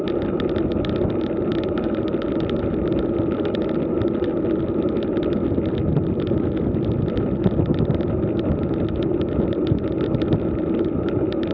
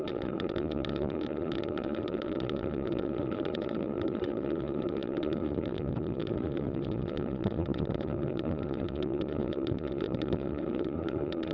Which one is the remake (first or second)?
second